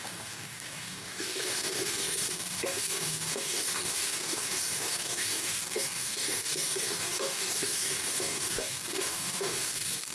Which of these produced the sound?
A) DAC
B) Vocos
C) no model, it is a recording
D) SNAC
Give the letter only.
A